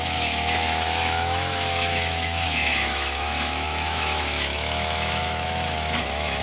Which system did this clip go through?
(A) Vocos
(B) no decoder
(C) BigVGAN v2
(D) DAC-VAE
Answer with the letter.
D